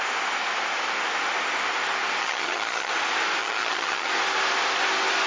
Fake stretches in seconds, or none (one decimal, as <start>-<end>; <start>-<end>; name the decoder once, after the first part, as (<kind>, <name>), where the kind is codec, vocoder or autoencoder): 2.2-2.9 (vocoder, HiFi-GAN); 3.4-4.1